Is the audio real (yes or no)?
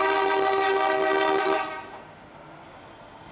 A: yes